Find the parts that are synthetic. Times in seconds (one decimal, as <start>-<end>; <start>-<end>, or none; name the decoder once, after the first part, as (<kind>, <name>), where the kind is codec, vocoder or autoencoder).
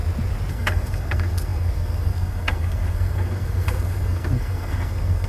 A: 0.5-5.3 (codec, SNAC)